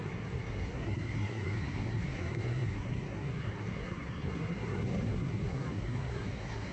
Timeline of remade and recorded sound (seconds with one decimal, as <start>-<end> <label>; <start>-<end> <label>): 0.0-6.7 remade